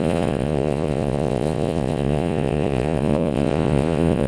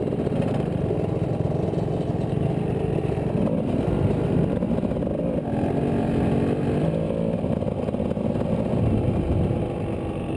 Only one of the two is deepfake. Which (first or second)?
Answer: first